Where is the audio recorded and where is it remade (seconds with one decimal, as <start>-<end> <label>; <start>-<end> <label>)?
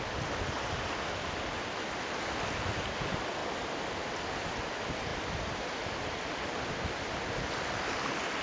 0.0-8.4 recorded